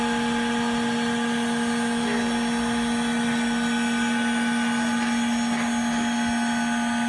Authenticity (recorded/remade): recorded